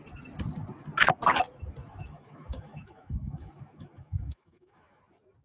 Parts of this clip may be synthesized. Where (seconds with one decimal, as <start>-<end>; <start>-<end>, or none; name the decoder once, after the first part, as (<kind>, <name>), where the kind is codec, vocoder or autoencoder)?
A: 1.8-5.0 (autoencoder, DAC-VAE)

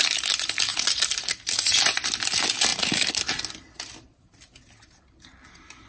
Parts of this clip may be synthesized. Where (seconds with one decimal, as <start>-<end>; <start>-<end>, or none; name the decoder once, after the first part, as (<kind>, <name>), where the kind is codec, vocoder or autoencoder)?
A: 0.7-1.3 (vocoder, BigVGAN v2); 2.7-3.3

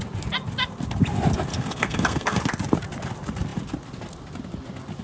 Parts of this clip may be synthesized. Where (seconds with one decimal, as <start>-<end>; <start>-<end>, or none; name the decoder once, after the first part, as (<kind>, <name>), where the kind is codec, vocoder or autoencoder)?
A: 1.5-2.4 (codec, SNAC)

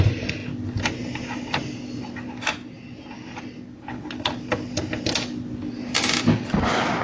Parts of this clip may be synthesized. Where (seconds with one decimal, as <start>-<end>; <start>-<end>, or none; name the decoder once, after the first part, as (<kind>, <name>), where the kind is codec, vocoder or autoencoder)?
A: none

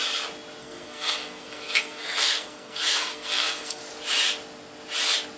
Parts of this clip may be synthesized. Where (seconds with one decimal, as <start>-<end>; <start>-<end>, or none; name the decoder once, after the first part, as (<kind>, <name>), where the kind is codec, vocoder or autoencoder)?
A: 0.6-3.8 (codec, SNAC)